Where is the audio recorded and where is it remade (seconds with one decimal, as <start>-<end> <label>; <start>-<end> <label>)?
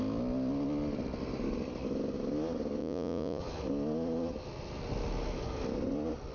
0.0-2.8 recorded; 2.8-3.4 remade; 3.4-6.3 recorded